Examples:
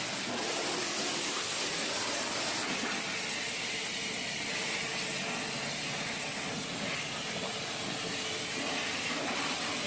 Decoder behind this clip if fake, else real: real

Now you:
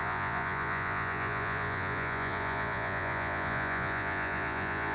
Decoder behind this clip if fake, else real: fake, vocoder, Vocos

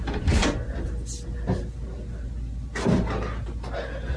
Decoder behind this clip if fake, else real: real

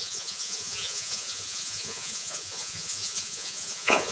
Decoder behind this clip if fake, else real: fake, vocoder, Vocos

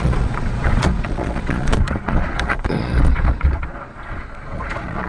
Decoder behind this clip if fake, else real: fake, vocoder, Vocos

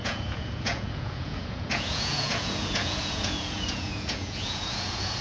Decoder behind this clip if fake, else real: fake, vocoder, Vocos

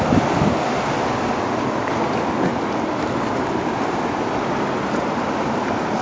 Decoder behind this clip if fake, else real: real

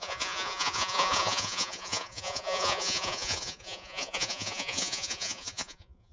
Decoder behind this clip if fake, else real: fake, vocoder, Vocos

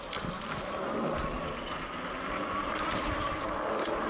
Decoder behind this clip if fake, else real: real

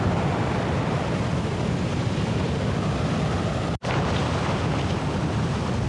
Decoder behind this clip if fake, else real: real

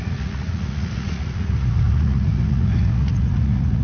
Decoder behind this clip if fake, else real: fake, vocoder, Vocos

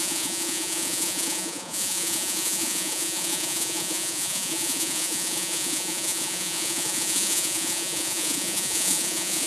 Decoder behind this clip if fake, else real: fake, vocoder, Vocos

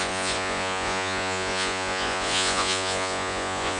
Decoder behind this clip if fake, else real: fake, vocoder, Vocos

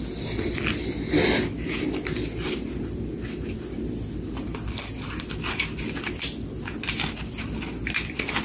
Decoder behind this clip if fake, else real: real